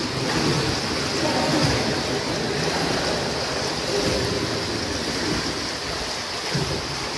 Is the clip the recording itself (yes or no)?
yes